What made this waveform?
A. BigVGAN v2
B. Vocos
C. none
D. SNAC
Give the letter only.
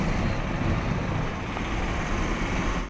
A